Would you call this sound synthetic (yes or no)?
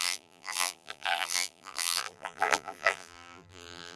yes